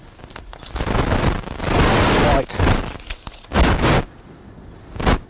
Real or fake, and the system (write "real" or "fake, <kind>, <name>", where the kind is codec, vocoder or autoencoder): real